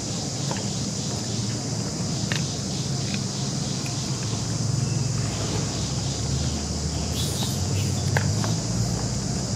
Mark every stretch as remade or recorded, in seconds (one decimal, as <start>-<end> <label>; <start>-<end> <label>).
0.0-7.0 recorded; 7.0-8.3 remade; 8.3-9.6 recorded